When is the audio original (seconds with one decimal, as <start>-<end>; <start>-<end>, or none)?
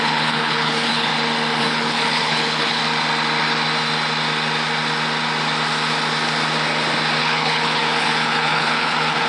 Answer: 1.1-1.6; 2.8-7.2